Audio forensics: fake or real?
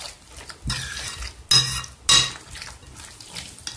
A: real